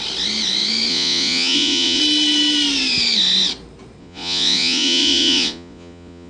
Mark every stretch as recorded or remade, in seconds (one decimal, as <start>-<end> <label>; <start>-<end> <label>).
0.0-0.9 recorded; 0.9-2.0 remade; 2.0-4.0 recorded; 4.0-6.3 remade